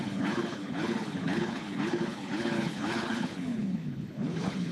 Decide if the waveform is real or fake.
fake